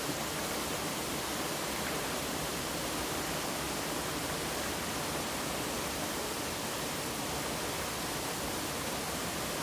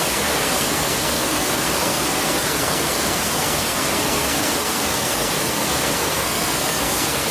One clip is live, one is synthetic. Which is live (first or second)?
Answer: first